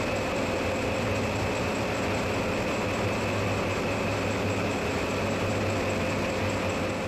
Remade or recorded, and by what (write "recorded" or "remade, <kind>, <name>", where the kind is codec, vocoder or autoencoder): recorded